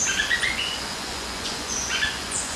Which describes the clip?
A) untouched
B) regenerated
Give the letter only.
B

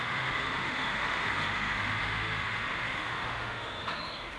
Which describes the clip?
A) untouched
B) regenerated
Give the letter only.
B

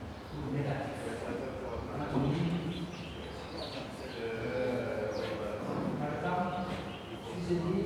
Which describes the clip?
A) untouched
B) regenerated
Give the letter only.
A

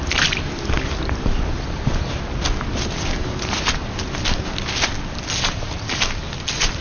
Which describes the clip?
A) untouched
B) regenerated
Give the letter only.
A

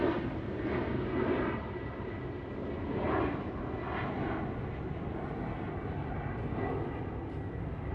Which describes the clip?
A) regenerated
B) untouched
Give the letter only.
B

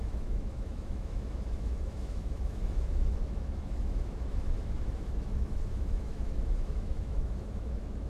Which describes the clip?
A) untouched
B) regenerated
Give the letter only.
B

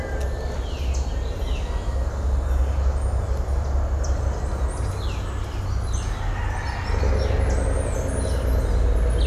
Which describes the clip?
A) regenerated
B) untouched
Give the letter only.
B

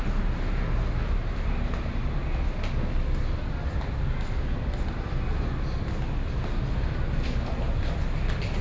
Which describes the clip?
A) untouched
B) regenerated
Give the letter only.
A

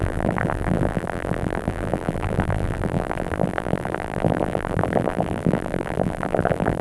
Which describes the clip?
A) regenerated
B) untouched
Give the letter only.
A